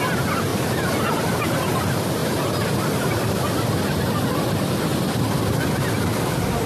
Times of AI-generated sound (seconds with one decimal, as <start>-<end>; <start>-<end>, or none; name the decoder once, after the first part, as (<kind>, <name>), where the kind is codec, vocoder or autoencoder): 0.5-1.6 (vocoder, BigVGAN v2)